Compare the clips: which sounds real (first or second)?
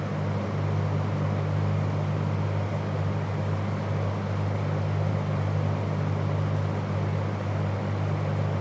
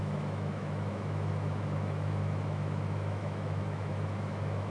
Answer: first